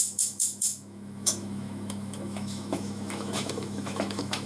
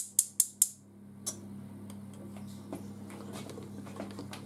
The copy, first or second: first